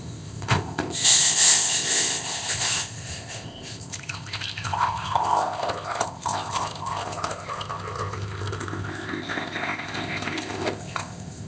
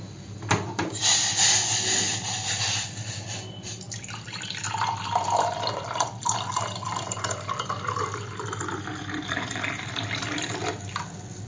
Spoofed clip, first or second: first